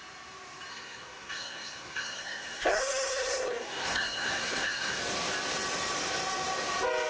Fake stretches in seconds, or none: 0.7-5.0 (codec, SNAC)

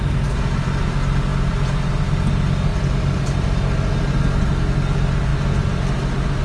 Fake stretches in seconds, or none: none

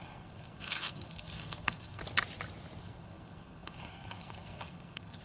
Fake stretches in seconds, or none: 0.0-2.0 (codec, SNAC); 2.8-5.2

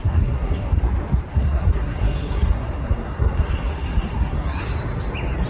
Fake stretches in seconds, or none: 0.0-0.8 (codec, SNAC); 1.3-4.6

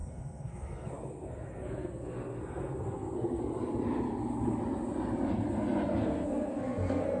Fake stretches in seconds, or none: 0.0-3.4 (codec, SNAC); 6.0-7.2

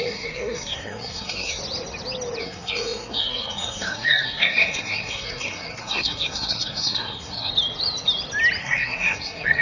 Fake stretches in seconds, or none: 0.0-1.6 (codec, SNAC); 2.4-7.5; 8.6-9.6

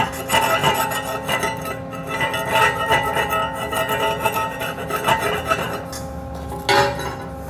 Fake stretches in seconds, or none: none

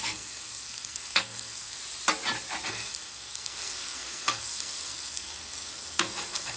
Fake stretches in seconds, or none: 0.0-1.8 (codec, SNAC); 2.7-6.6